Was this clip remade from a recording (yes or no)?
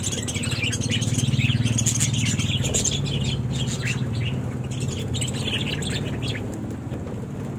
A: no